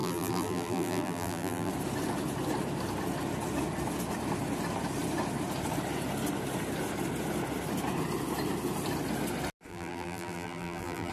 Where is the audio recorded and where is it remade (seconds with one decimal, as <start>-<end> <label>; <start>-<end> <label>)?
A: 0.0-1.7 remade; 1.7-9.7 recorded; 9.7-11.1 remade